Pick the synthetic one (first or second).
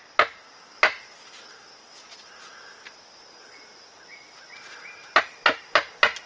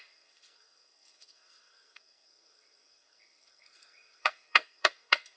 second